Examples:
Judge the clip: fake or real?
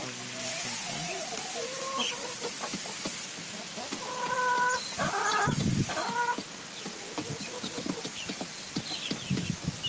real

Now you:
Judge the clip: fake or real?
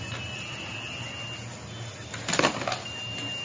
real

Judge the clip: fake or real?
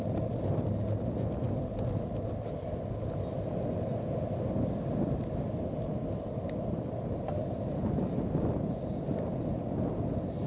real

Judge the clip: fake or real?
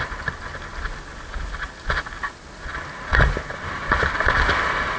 real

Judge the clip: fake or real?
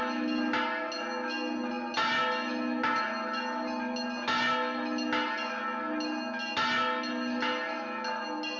real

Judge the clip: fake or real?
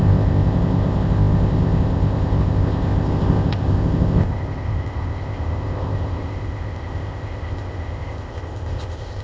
fake